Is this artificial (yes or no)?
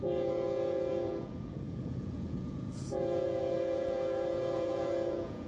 yes